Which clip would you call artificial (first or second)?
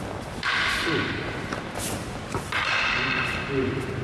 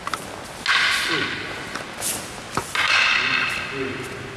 first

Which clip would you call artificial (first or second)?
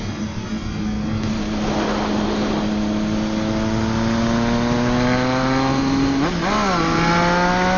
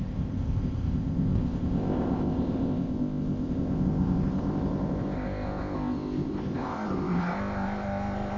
second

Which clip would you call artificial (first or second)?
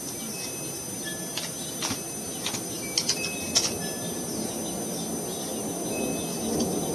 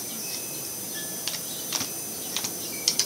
second